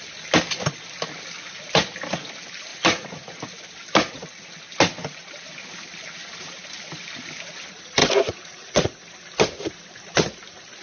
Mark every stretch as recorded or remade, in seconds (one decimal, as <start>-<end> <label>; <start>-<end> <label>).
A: 0.0-2.7 recorded; 2.7-3.4 remade; 3.4-8.0 recorded; 8.0-9.0 remade; 9.0-10.8 recorded